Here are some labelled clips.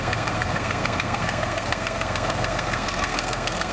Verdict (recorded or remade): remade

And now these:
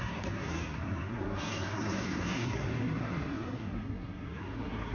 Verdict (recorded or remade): remade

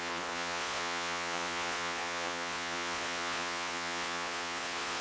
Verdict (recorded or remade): remade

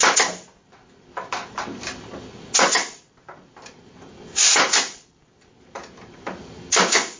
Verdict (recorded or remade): recorded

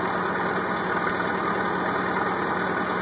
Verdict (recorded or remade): recorded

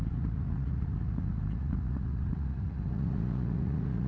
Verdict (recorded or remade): remade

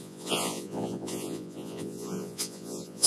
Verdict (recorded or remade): remade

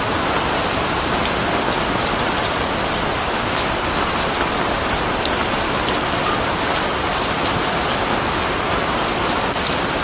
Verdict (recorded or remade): recorded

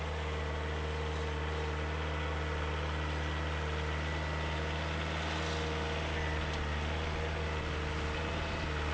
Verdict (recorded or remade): recorded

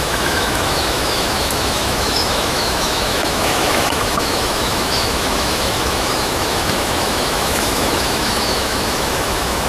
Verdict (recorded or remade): remade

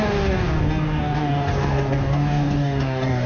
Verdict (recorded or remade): remade